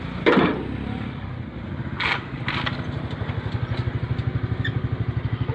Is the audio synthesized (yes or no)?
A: no